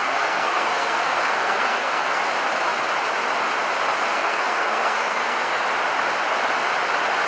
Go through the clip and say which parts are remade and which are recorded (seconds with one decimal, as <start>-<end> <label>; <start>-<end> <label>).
0.0-2.2 remade; 2.2-4.1 recorded; 4.1-5.6 remade; 5.6-7.3 recorded